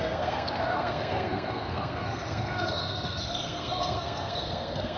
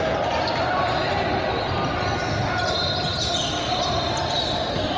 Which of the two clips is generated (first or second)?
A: first